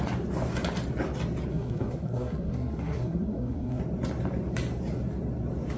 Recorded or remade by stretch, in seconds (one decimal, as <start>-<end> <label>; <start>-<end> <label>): 0.0-1.5 recorded; 1.5-3.8 remade; 3.8-5.8 recorded